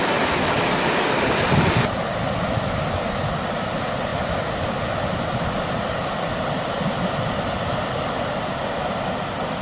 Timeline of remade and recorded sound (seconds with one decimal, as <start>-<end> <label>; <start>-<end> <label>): 0.0-9.6 recorded